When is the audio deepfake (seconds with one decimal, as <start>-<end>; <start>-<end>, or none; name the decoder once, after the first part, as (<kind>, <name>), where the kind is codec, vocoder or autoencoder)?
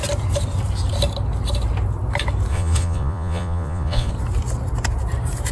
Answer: 2.5-4.1 (vocoder, Vocos)